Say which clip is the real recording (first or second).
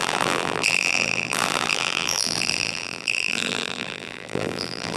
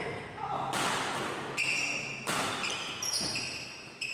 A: second